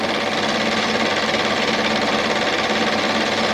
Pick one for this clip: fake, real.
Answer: real